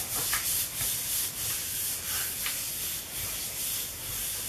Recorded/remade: recorded